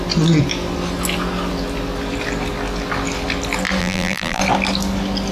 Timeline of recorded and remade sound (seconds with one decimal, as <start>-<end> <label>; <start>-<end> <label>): 0.0-3.8 recorded; 3.8-4.4 remade; 4.4-5.3 recorded